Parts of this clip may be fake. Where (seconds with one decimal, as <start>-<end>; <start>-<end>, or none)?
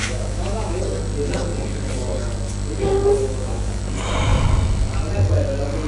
0.0-0.8; 3.2-3.8